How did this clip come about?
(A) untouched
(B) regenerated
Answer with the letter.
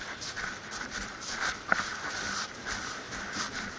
A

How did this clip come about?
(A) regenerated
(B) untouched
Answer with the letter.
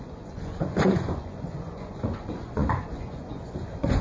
A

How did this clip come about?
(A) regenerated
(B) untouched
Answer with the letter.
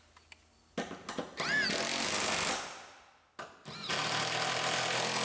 B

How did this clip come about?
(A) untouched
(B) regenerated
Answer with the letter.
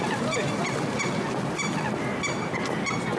A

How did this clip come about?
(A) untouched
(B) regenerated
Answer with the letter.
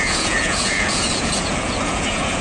B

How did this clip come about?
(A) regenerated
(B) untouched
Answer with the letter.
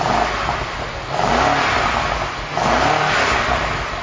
B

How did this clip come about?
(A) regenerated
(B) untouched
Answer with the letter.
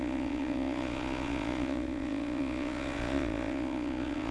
A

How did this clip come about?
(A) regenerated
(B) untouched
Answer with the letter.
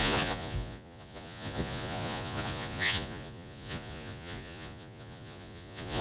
A